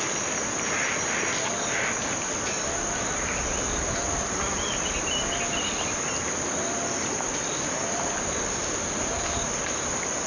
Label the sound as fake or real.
real